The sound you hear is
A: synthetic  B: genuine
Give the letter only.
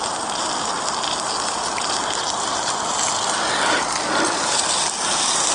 B